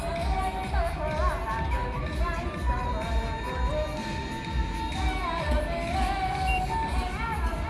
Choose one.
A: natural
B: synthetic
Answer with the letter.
A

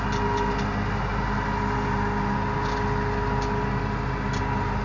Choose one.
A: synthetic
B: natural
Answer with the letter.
B